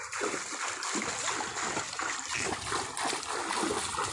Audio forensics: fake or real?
real